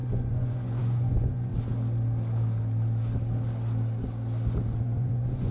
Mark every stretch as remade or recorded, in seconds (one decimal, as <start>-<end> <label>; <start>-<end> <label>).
0.0-1.5 remade; 1.5-4.8 recorded; 4.8-5.5 remade